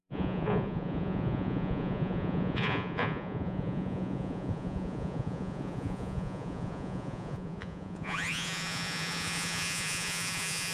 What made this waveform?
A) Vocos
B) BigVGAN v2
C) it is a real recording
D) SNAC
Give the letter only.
A